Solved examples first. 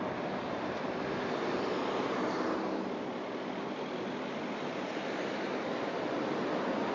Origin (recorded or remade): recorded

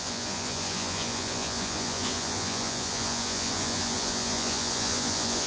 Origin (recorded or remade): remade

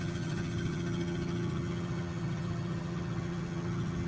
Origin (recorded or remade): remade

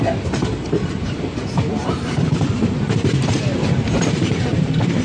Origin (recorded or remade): remade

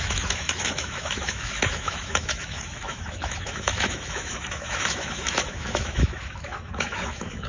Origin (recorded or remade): remade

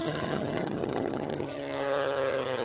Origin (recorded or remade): remade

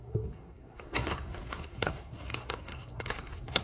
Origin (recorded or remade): remade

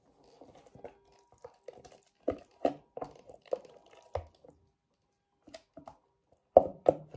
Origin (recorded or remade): recorded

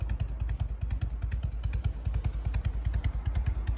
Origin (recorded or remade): recorded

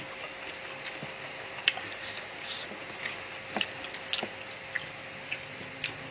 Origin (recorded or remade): recorded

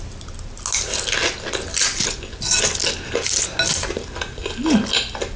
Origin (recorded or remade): recorded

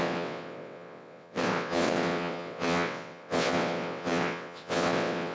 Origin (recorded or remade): remade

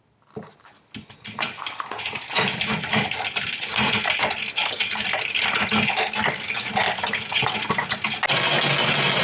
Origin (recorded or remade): recorded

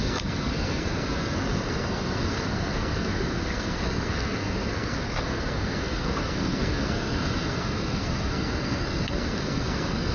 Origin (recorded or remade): remade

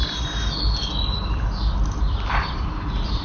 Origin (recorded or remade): recorded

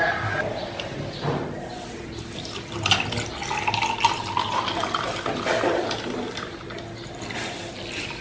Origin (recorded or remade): recorded